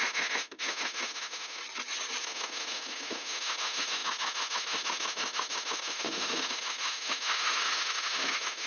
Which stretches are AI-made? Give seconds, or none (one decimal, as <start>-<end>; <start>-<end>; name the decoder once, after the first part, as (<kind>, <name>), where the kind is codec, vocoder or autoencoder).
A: 0.0-1.6 (autoencoder, DAC-VAE); 2.2-8.7

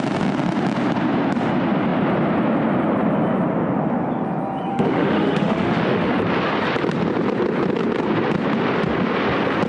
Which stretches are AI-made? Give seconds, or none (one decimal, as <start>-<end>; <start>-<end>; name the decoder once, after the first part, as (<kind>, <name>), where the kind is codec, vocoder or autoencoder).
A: 4.7-6.1 (autoencoder, DAC-VAE)

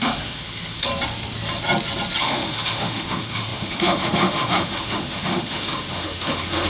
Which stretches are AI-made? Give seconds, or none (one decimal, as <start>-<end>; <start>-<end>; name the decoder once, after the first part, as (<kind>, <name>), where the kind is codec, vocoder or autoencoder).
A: 0.0-0.9 (autoencoder, DAC-VAE); 2.2-6.7